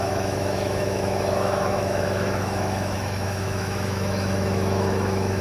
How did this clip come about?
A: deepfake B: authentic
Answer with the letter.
A